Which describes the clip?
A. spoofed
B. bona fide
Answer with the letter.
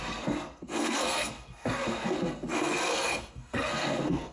A